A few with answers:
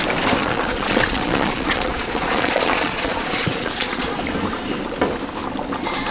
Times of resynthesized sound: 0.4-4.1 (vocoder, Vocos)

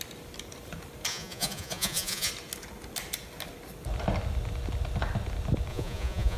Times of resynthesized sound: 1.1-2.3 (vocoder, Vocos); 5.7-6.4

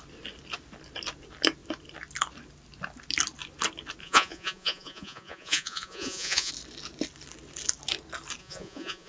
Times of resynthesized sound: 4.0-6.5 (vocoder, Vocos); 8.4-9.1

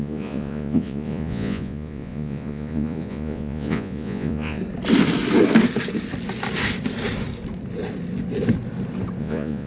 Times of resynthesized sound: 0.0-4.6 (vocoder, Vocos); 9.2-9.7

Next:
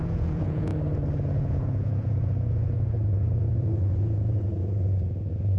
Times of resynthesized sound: 0.0-0.7 (vocoder, Vocos); 1.4-5.6